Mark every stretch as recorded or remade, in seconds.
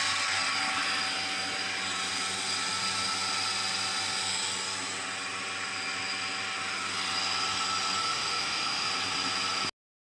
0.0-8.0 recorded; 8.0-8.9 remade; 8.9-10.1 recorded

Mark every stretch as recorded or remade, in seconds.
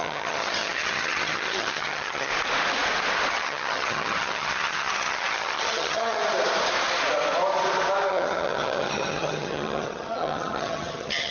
0.0-2.3 remade; 2.3-3.3 recorded; 3.3-6.2 remade; 6.2-8.1 recorded; 8.1-11.3 remade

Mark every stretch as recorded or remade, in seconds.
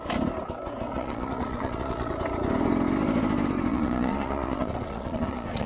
0.0-0.9 recorded; 0.9-2.1 remade; 2.1-3.7 recorded; 3.7-5.7 remade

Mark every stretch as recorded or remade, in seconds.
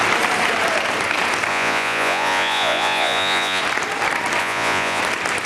0.0-1.5 recorded; 1.5-3.6 remade; 3.6-4.4 recorded; 4.4-5.0 remade; 5.0-5.5 recorded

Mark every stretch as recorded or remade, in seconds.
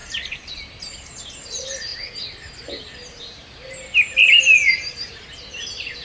0.0-0.8 remade; 0.8-6.0 recorded